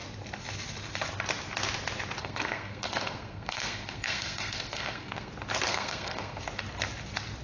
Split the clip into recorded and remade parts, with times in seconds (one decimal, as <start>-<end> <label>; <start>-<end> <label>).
0.0-2.2 recorded; 2.2-5.3 remade; 5.3-5.7 recorded; 5.7-6.4 remade; 6.4-7.4 recorded